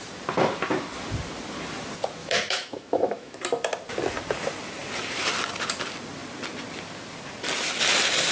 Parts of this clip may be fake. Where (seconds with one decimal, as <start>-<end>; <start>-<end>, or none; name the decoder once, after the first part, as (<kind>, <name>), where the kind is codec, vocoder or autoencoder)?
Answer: 2.2-3.4 (autoencoder, DAC-VAE)